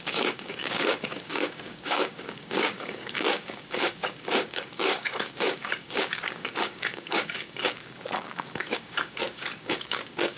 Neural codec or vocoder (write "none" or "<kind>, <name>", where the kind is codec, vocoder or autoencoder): codec, DAC